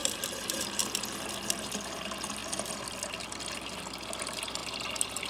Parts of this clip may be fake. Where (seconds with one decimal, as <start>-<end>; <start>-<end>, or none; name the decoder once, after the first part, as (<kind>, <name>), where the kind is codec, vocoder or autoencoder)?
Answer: 0.0-0.8 (vocoder, BigVGAN v2)